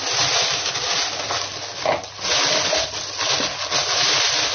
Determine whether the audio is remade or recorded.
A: recorded